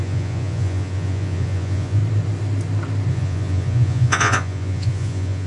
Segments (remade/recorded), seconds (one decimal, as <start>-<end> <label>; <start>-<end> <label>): 0.0-2.0 remade; 2.0-3.1 recorded; 3.1-5.5 remade